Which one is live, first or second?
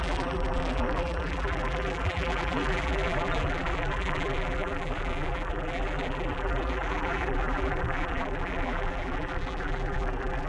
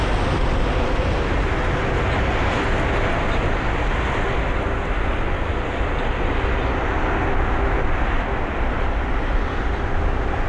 second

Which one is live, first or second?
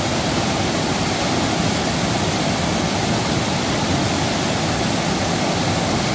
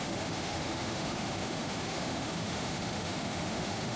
first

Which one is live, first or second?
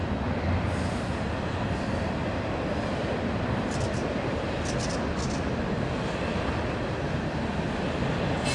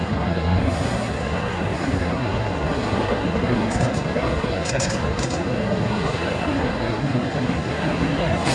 first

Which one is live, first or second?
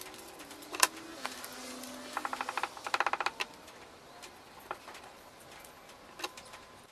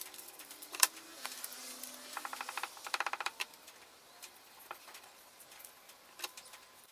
first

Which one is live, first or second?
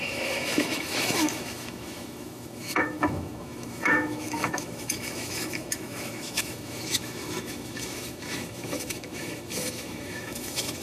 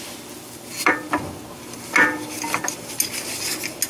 second